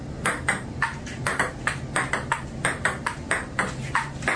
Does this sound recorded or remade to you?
recorded